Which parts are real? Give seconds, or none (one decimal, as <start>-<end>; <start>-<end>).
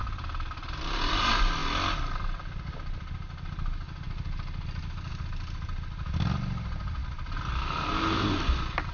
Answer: 0.0-8.9